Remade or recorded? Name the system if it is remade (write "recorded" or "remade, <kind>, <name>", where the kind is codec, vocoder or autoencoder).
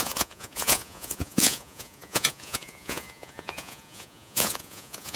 remade, vocoder, Vocos